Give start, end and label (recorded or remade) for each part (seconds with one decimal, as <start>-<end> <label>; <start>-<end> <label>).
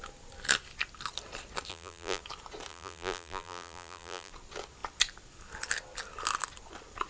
0.0-1.7 recorded; 1.7-2.2 remade; 2.2-2.7 recorded; 2.7-4.3 remade; 4.3-7.1 recorded